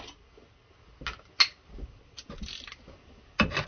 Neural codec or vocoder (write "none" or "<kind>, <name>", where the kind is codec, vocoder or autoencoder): none